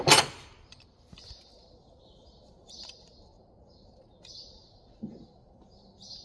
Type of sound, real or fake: real